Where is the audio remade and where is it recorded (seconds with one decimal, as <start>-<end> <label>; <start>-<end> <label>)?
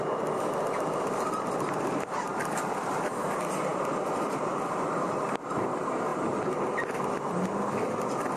0.0-8.4 recorded